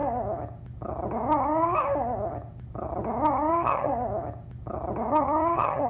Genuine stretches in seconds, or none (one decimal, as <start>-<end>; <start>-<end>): 0.0-3.5; 3.9-5.1